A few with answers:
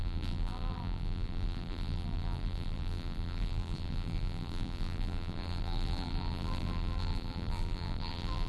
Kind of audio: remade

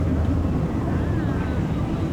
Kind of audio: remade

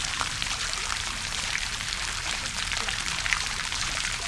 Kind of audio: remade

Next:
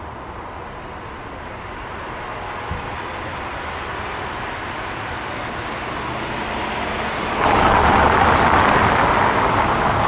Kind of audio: recorded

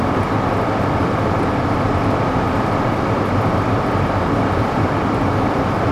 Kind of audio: remade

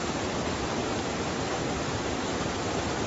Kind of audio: remade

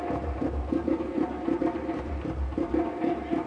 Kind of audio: remade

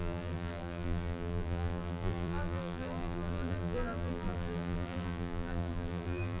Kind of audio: remade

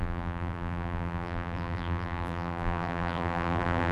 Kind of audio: remade